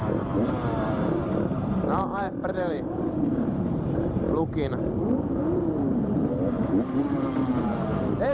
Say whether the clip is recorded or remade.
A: remade